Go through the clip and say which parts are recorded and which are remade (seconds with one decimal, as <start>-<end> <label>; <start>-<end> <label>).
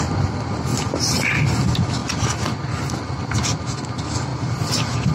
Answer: 0.0-0.7 recorded; 0.7-1.6 remade; 1.6-4.3 recorded; 4.3-5.1 remade